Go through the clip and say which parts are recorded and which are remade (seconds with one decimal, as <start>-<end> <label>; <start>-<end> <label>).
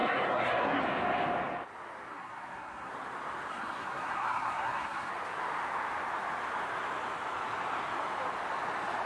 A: 0.0-0.8 remade; 0.8-2.1 recorded; 2.1-2.9 remade; 2.9-3.5 recorded; 3.5-5.1 remade; 5.1-9.1 recorded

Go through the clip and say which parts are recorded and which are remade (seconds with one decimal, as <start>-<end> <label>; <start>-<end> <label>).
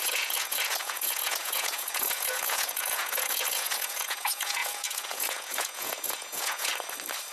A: 0.0-6.7 remade; 6.7-7.3 recorded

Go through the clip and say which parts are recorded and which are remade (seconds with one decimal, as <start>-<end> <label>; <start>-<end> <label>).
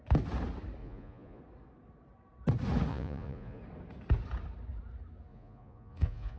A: 0.0-0.8 recorded; 0.8-1.4 remade; 1.4-2.9 recorded; 2.9-3.6 remade; 3.6-5.3 recorded; 5.3-6.4 remade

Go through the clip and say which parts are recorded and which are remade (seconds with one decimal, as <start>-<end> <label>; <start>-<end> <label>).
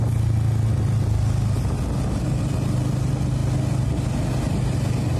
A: 0.0-5.2 recorded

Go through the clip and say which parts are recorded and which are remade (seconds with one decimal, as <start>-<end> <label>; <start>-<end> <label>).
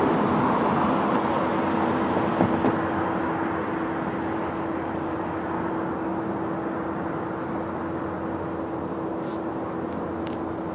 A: 0.0-10.7 recorded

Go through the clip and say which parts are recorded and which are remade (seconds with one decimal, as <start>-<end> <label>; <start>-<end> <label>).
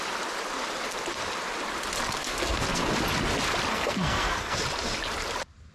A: 0.0-2.2 recorded; 2.2-2.9 remade; 2.9-3.7 recorded; 3.7-4.6 remade; 4.6-5.7 recorded